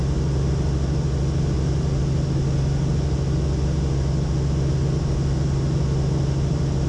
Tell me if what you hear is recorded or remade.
recorded